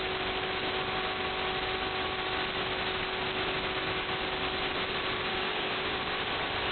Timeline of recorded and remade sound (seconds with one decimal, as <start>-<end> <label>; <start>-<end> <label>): 0.0-5.3 recorded; 5.3-5.9 remade; 5.9-6.7 recorded